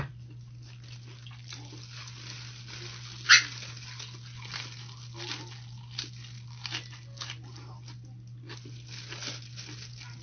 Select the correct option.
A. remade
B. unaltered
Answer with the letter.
B